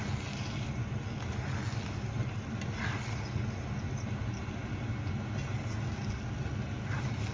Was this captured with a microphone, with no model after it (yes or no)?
yes